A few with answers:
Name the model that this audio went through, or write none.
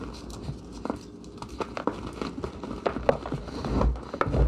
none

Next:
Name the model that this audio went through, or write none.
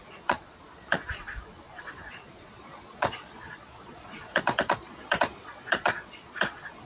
vocoder, Vocos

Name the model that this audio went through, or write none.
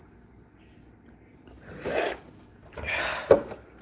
none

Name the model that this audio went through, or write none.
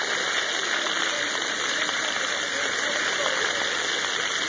none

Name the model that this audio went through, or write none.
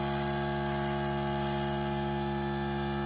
none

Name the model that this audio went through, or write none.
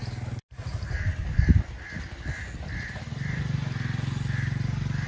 none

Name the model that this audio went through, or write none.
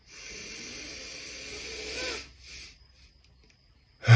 none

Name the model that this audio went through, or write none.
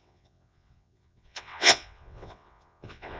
vocoder, WaveNeXt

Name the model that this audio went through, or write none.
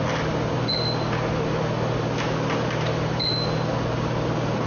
none